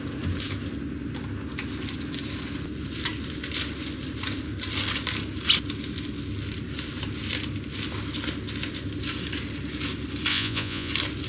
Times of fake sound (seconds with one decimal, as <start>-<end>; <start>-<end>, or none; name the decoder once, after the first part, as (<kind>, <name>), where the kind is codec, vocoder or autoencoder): 10.3-10.9 (vocoder, Vocos)